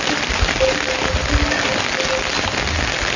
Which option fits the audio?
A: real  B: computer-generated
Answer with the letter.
A